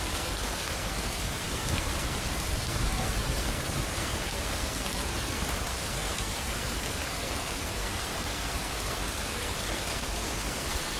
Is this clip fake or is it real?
fake